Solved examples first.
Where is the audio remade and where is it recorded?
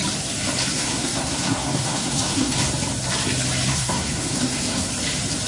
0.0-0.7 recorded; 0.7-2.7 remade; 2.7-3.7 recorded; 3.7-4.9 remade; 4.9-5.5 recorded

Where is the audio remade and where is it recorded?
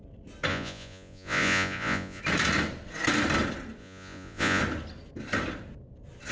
0.0-0.5 recorded; 0.5-2.2 remade; 2.2-3.8 recorded; 3.8-4.6 remade; 4.6-6.3 recorded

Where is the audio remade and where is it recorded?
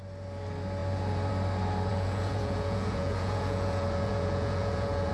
0.0-1.9 recorded; 1.9-5.1 remade